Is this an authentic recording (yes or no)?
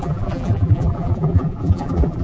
no